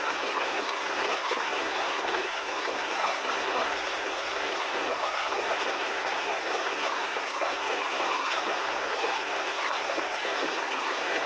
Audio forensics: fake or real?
fake